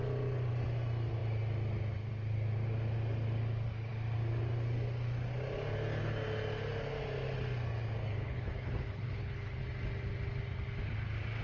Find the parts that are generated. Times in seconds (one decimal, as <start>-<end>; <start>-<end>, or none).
8.0-9.6

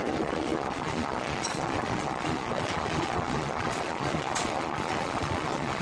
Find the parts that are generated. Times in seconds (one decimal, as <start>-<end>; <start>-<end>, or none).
0.0-5.8

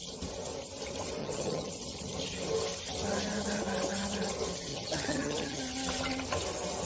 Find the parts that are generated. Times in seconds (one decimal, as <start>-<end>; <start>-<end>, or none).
1.2-1.7; 4.7-5.6